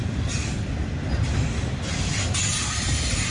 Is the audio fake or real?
real